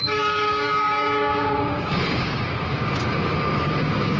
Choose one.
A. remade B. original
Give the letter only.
A